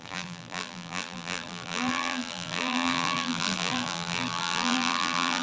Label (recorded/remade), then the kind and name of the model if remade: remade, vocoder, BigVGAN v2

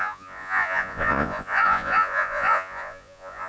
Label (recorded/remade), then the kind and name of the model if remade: remade, vocoder, Vocos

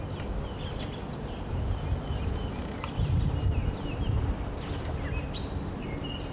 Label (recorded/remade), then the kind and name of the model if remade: recorded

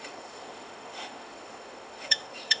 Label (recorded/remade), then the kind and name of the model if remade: remade, autoencoder, DAC-VAE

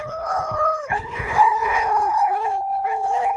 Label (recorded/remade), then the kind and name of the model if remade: remade, codec, HILCodec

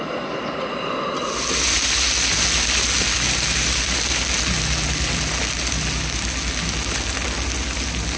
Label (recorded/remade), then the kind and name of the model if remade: recorded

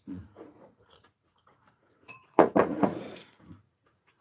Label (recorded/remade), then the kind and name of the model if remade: remade, vocoder, Vocos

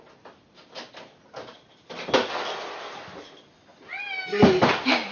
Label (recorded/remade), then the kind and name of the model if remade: recorded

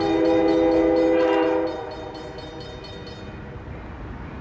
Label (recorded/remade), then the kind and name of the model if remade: recorded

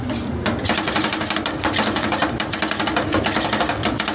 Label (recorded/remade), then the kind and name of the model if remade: recorded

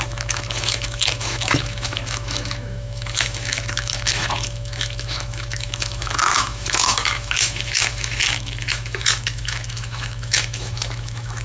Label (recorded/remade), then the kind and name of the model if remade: remade, autoencoder, DAC-VAE